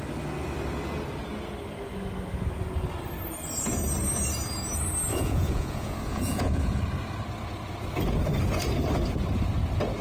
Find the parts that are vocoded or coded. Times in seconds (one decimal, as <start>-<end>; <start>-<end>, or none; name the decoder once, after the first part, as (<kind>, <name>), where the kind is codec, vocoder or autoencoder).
5.1-6.8 (vocoder, Vocos)